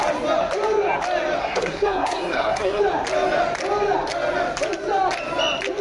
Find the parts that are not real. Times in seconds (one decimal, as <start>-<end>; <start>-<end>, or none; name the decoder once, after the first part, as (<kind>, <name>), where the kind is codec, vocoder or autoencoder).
1.4-2.8 (codec, SNAC)